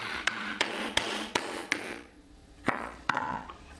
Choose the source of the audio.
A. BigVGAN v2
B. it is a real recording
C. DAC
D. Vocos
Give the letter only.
D